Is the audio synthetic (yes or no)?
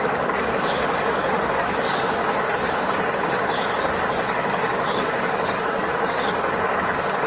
yes